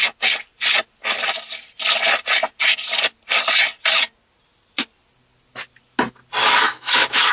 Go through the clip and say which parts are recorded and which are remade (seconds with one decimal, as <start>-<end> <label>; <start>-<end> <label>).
0.0-6.4 recorded; 6.4-7.3 remade

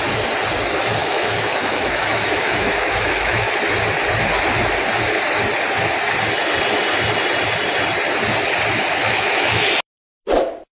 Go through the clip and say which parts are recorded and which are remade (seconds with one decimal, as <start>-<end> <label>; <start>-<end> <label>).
0.0-1.0 recorded; 1.0-3.5 remade; 3.5-9.0 recorded; 9.0-9.7 remade; 9.7-10.8 recorded

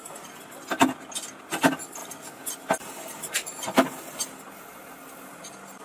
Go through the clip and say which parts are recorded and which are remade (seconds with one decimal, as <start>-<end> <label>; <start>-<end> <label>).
0.0-5.8 recorded

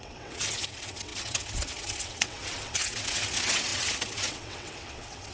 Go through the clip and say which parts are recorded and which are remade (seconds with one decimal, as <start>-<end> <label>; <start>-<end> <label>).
0.0-5.3 remade

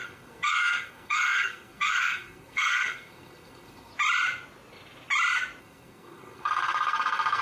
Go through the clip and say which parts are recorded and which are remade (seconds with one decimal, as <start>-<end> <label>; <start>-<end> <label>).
0.0-3.9 remade; 3.9-5.6 recorded; 5.6-7.4 remade